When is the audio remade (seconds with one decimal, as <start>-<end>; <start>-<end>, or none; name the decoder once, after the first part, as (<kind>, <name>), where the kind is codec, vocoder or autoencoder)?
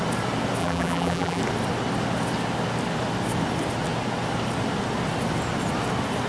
0.6-1.4 (vocoder, BigVGAN v2)